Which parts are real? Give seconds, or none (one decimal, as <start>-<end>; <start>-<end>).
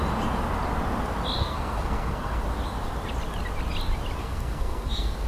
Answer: 0.0-1.4; 2.4-4.2